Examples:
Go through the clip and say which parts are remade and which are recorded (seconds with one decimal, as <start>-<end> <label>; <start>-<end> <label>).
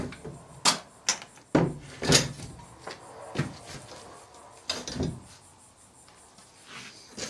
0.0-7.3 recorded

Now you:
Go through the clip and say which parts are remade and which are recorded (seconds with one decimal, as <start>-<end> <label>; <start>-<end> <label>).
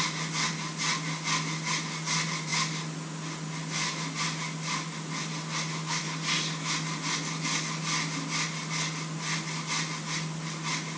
0.0-11.0 recorded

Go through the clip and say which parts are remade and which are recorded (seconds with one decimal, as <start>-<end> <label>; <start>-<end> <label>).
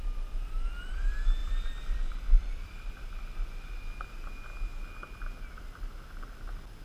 0.0-1.4 recorded; 1.4-3.1 remade; 3.1-6.8 recorded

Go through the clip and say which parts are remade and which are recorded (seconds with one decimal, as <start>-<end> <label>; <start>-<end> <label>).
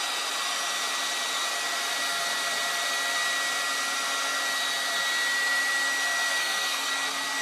0.0-6.3 recorded; 6.3-6.9 remade; 6.9-7.4 recorded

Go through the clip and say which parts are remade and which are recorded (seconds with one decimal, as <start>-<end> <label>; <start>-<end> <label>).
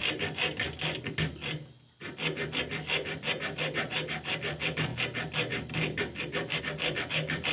0.0-7.5 recorded